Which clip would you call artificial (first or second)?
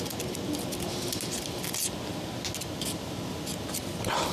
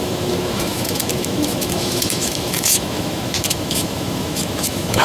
second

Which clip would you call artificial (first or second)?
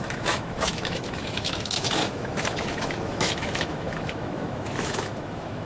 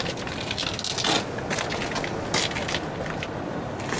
first